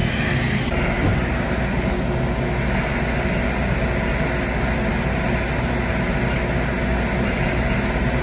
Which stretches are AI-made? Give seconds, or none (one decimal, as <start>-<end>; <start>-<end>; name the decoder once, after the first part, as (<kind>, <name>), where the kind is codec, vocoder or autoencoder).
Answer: none